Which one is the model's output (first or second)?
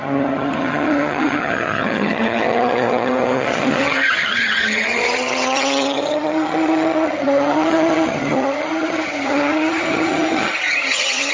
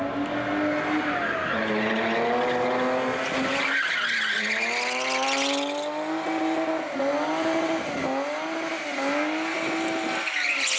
first